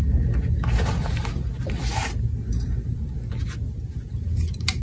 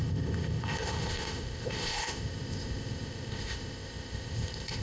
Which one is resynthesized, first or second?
second